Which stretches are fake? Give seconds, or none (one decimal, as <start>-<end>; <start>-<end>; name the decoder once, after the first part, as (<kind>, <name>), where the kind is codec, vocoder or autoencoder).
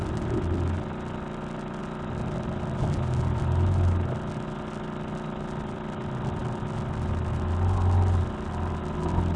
none